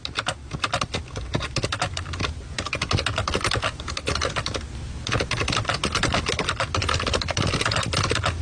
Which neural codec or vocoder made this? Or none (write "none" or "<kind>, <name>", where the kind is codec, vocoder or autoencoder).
none